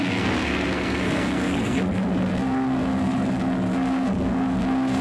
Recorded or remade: remade